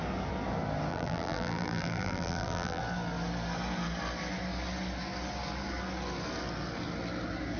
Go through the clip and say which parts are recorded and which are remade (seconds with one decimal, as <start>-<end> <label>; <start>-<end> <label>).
0.0-0.9 recorded; 0.9-2.8 remade; 2.8-7.6 recorded